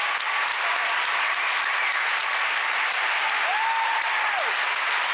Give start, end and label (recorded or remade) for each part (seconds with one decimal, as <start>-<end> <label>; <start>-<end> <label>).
0.0-2.2 recorded; 2.2-4.6 remade; 4.6-5.1 recorded